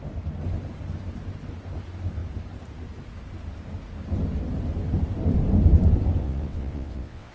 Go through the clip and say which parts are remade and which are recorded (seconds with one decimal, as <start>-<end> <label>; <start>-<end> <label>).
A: 0.0-6.2 recorded; 6.2-7.3 remade